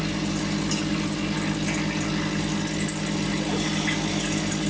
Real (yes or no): yes